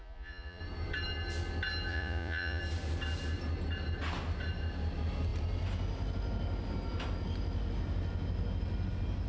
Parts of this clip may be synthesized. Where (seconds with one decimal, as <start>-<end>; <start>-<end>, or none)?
0.0-0.6; 1.9-2.6